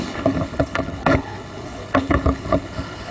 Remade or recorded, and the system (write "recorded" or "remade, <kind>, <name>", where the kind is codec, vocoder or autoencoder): remade, codec, HILCodec